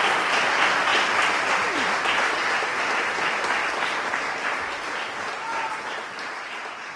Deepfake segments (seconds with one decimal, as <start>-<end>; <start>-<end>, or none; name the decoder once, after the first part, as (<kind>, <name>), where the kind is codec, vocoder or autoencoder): none